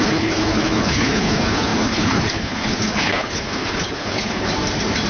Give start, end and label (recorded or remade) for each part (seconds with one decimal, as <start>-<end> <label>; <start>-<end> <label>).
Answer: 0.0-4.5 remade; 4.5-5.1 recorded